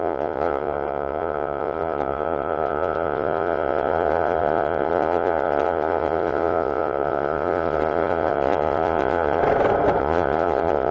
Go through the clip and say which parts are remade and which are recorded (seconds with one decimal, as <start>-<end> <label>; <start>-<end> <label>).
0.0-9.4 remade; 9.4-10.0 recorded; 10.0-10.9 remade